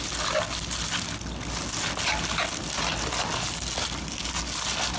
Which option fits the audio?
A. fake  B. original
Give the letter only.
B